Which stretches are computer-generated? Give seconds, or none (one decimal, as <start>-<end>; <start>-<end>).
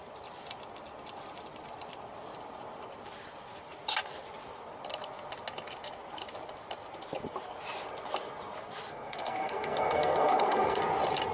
8.9-10.8